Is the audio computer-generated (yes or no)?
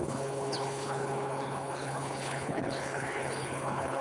yes